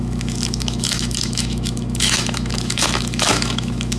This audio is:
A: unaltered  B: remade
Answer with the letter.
B